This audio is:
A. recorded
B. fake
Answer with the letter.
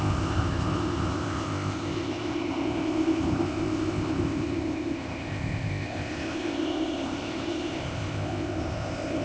B